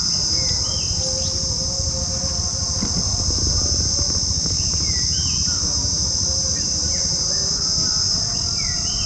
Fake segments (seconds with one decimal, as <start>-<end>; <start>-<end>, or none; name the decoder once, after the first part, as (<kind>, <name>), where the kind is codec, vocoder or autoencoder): 2.6-3.6 (vocoder, BigVGAN v2)